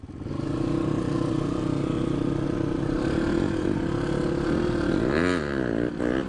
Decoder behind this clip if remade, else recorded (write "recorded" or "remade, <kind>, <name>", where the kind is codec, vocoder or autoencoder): recorded